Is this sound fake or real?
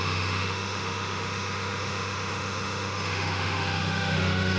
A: fake